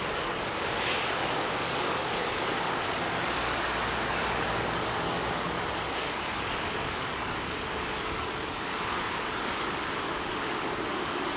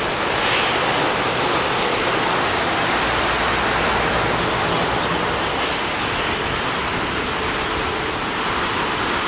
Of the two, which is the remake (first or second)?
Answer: first